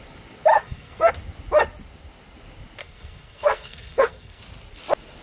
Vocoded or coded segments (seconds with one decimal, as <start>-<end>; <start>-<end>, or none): 0.5-1.1; 2.8-4.4